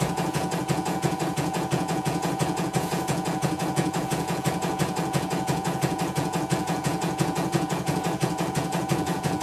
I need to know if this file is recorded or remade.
remade